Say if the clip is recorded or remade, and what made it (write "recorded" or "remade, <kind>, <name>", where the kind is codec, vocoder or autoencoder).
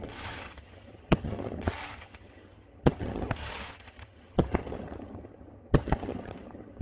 remade, vocoder, HiFi-GAN